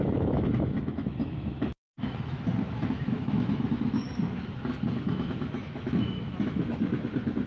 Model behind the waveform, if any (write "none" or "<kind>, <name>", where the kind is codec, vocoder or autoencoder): autoencoder, DAC-VAE